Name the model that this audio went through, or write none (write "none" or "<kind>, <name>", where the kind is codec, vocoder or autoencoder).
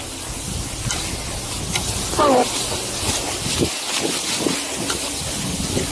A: none